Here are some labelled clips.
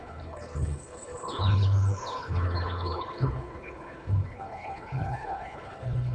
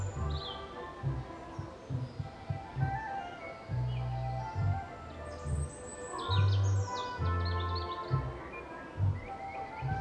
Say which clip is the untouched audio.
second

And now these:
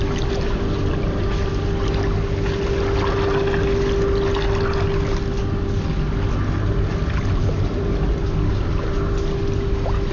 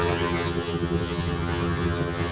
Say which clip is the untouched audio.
first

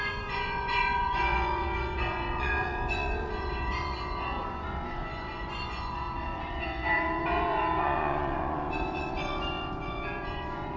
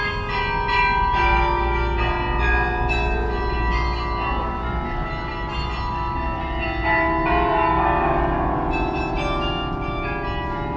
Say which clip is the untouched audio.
second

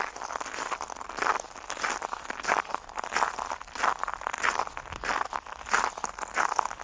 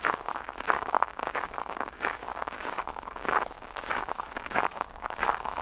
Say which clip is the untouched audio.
first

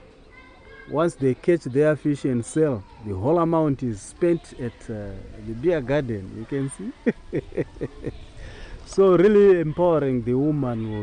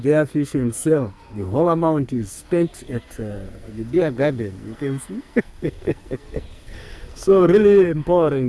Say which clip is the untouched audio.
first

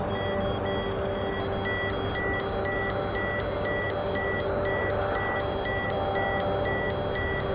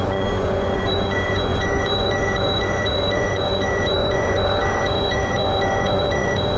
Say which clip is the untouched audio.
first